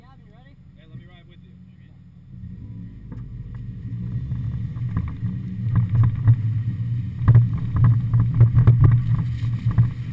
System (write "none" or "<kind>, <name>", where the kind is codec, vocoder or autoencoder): none